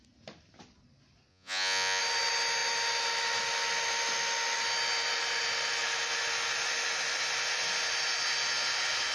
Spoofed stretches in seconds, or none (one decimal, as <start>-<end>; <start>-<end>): 1.3-2.0